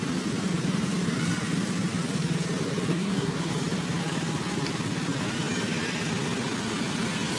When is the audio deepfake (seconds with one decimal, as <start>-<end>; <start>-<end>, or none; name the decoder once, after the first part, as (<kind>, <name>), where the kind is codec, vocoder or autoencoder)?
2.9-3.5 (codec, SNAC)